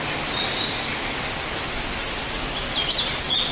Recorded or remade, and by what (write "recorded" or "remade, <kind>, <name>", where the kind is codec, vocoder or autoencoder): recorded